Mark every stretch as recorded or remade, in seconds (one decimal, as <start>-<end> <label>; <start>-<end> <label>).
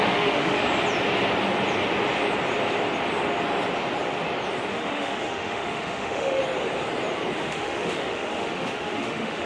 0.0-0.6 remade; 0.6-4.7 recorded; 4.7-6.4 remade; 6.4-7.4 recorded; 7.4-9.5 remade